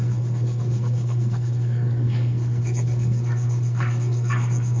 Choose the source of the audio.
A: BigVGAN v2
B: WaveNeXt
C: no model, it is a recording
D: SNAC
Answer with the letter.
D